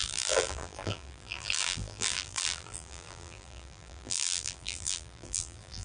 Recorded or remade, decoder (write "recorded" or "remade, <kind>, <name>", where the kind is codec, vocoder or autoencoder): remade, vocoder, BigVGAN v2